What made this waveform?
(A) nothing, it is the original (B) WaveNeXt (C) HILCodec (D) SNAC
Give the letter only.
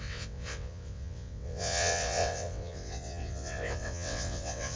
B